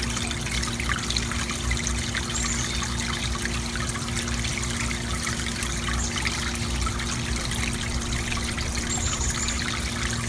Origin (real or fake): real